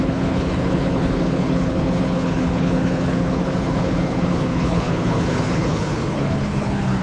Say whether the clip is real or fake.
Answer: fake